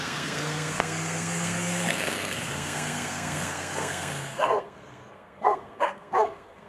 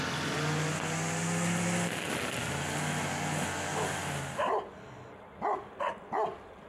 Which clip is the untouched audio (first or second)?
second